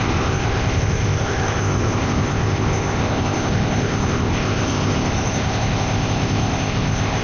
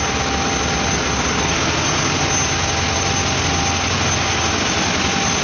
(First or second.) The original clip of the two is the second